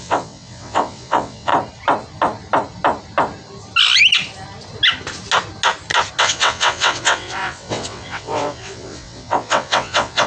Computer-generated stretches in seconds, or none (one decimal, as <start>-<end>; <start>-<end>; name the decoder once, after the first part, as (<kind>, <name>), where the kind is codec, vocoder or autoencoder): 0.0-1.5 (vocoder, WaveNeXt); 6.2-10.3